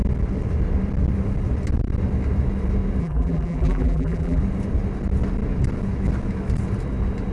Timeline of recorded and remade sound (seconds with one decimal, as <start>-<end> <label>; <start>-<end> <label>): 0.0-3.0 recorded; 3.0-4.4 remade; 4.4-7.3 recorded

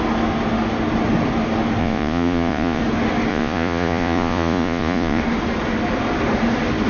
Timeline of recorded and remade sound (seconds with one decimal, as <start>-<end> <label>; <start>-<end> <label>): 0.0-1.8 recorded; 1.8-2.8 remade; 2.8-3.3 recorded; 3.3-5.2 remade; 5.2-6.9 recorded

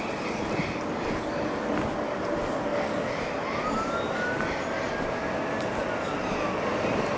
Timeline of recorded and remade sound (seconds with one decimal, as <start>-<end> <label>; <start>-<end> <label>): 0.0-7.2 recorded

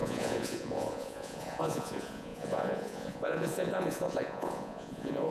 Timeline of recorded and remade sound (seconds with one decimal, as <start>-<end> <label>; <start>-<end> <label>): 0.0-5.3 remade

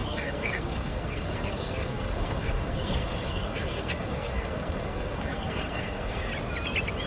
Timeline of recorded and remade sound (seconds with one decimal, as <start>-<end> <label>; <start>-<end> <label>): 0.0-6.3 remade; 6.3-7.1 recorded

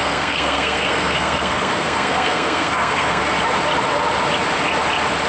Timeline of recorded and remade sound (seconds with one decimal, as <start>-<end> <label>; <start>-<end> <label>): 0.0-3.2 remade; 3.2-5.3 recorded

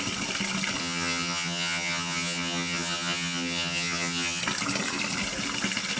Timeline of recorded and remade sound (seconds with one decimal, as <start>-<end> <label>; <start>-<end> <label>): 0.0-0.8 recorded; 0.8-4.4 remade; 4.4-6.0 recorded

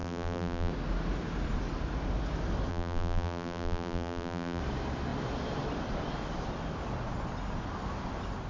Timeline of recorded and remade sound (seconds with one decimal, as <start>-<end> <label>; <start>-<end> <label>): 0.0-0.7 remade; 0.7-2.7 recorded; 2.7-4.6 remade; 4.6-8.5 recorded